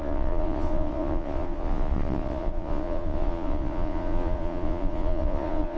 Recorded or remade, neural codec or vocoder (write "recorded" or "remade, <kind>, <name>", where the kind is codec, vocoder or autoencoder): remade, vocoder, Vocos